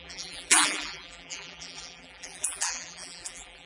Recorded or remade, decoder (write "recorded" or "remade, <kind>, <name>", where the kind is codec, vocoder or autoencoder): remade, vocoder, BigVGAN v2